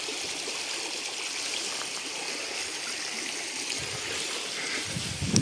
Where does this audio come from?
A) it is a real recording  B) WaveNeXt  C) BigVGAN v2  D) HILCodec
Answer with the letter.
A